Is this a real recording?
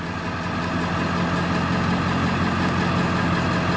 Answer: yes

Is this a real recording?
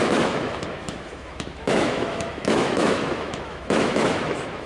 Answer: no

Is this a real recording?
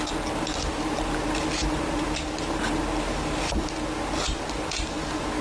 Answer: yes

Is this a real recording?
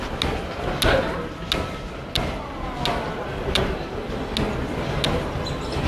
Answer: yes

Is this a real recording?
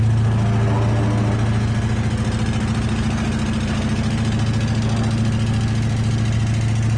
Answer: yes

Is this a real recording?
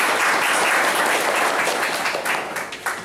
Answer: yes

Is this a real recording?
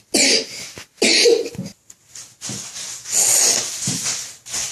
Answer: yes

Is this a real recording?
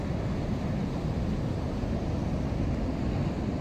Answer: yes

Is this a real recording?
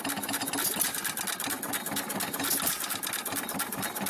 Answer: yes